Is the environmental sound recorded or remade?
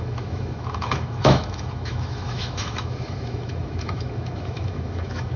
remade